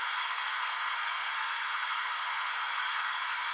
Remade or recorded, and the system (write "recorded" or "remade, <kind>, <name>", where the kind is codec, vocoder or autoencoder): remade, codec, SNAC